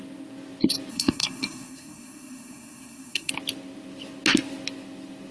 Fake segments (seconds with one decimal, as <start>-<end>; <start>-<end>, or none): 0.9-3.3